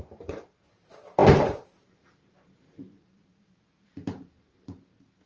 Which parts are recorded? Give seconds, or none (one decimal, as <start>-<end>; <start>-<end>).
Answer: none

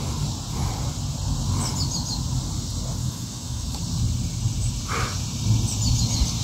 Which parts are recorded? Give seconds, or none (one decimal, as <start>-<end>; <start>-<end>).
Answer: 0.0-3.0; 3.8-6.4

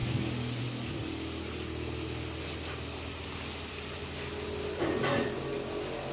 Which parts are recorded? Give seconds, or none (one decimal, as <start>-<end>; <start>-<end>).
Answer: 0.0-6.1